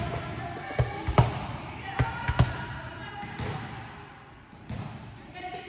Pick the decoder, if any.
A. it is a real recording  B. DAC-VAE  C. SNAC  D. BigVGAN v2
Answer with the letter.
A